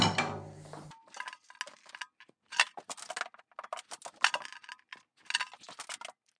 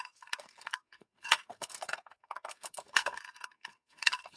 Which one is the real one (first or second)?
first